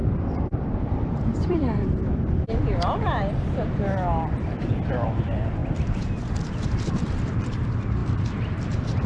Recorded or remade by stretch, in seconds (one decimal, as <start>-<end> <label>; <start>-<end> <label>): 0.0-5.6 remade; 5.6-6.9 recorded; 6.9-9.1 remade